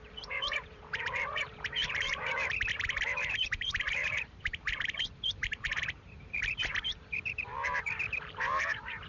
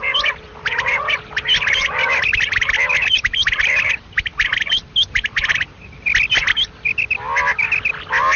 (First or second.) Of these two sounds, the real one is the second